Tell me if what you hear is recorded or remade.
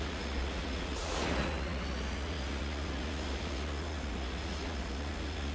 remade